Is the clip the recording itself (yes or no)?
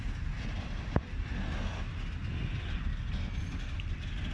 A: yes